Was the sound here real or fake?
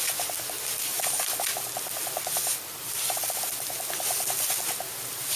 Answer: real